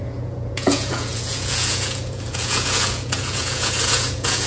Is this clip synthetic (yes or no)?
yes